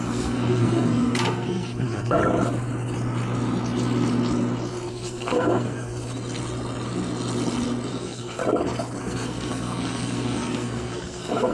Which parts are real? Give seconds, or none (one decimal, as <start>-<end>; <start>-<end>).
2.2-4.9; 5.9-7.9; 8.4-9.0